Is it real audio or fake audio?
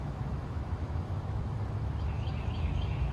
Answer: fake